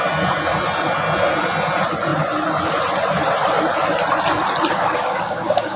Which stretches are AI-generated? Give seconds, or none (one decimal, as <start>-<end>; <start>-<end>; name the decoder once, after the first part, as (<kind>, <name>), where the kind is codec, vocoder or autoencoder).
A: 4.7-5.8 (codec, DAC)